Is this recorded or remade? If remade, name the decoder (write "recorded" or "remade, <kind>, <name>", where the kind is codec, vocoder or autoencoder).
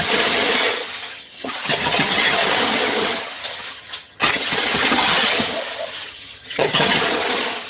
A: remade, vocoder, HiFi-GAN